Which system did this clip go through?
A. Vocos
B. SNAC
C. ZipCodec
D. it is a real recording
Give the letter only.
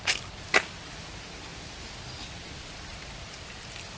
D